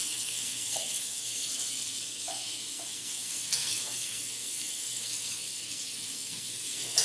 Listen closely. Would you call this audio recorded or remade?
remade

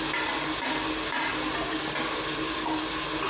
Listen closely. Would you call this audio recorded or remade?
recorded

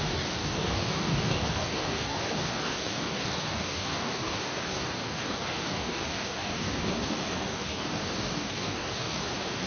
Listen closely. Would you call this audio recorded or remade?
remade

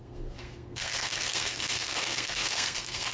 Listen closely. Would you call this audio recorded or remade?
remade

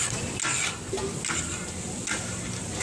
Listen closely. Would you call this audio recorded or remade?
recorded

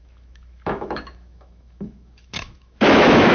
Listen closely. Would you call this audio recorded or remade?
remade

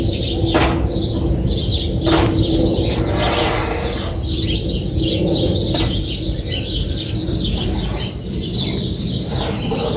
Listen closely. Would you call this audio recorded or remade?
recorded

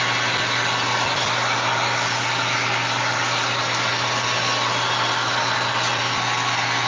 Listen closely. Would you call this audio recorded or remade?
recorded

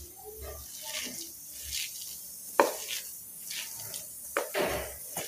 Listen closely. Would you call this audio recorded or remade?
recorded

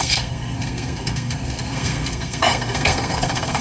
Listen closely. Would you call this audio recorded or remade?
remade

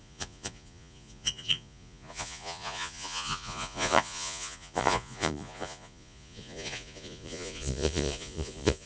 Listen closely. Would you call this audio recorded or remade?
remade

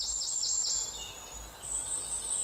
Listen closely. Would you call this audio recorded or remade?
recorded